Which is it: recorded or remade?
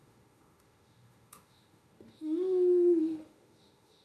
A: remade